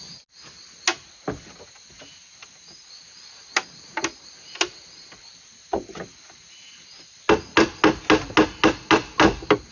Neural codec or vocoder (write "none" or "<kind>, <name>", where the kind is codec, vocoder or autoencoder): none